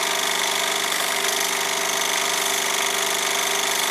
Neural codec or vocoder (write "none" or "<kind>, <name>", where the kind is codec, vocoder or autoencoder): none